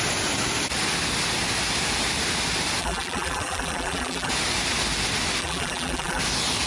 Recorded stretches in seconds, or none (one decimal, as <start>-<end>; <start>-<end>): 0.0-2.8; 4.3-5.4; 6.2-6.7